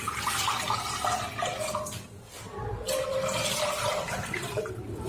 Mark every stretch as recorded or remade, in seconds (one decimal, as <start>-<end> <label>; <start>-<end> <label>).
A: 0.0-5.1 recorded